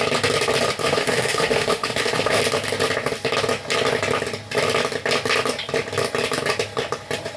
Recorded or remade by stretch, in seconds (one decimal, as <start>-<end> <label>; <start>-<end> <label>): 0.0-0.8 recorded; 0.8-2.4 remade; 2.4-7.4 recorded